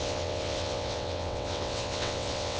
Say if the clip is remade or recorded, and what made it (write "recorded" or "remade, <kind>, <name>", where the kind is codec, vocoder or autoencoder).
remade, vocoder, WaveNeXt